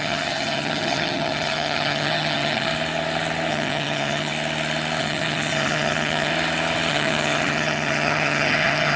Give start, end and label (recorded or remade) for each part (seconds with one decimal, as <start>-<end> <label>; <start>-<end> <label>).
0.0-2.7 remade; 2.7-3.5 recorded; 3.5-4.3 remade; 4.3-5.0 recorded; 5.0-6.3 remade; 6.3-6.9 recorded; 6.9-9.0 remade